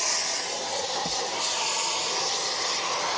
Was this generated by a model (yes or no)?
no